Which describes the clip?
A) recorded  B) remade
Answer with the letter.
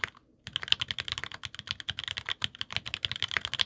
A